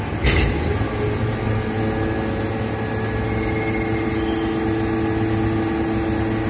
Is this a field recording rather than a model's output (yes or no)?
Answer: yes